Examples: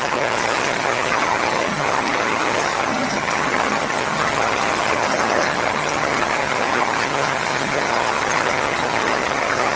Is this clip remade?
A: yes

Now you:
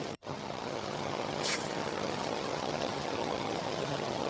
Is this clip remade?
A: yes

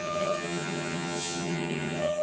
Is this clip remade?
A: yes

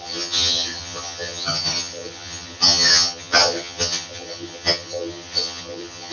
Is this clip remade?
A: yes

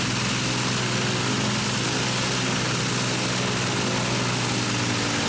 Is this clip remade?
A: no